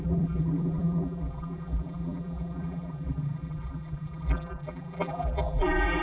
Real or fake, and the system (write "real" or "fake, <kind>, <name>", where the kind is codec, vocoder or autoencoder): fake, vocoder, BigVGAN v2